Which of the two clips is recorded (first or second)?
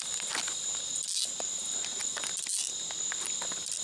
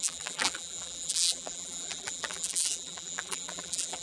first